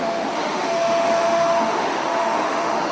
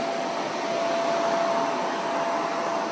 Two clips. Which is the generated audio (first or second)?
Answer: first